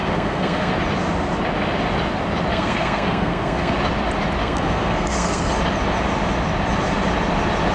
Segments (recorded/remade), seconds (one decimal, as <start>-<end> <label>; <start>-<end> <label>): 0.0-0.7 remade; 0.7-2.5 recorded; 2.5-3.7 remade; 3.7-4.4 recorded; 4.4-5.5 remade; 5.5-7.7 recorded